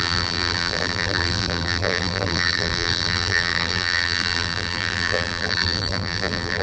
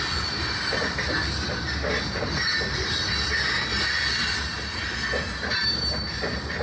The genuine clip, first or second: second